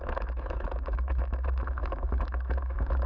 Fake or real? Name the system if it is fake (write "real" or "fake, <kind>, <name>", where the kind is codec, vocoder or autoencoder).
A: fake, autoencoder, DAC-VAE